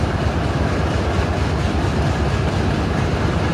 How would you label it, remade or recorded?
recorded